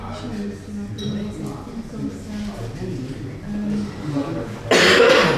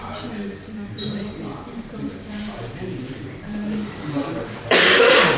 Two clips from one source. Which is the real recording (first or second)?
first